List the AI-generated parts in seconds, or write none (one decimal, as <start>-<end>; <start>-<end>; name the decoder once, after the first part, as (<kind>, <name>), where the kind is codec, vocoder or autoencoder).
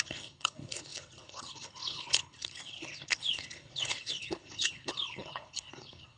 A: 0.0-6.2 (codec, HILCodec)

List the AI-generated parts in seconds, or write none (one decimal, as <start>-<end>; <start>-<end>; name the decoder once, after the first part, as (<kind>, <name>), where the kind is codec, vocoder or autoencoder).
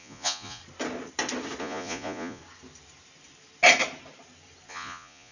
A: 0.0-0.6 (vocoder, Vocos); 1.6-2.4; 4.7-5.3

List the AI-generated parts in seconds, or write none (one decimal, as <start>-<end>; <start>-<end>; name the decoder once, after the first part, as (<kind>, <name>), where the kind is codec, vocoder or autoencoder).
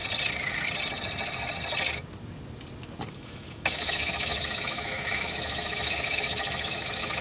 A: 3.1-7.2 (autoencoder, DAC-VAE)